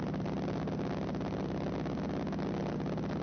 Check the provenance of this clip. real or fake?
real